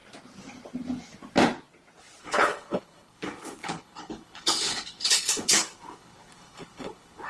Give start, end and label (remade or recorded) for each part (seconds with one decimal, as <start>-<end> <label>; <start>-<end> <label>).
0.0-2.2 recorded; 2.2-7.3 remade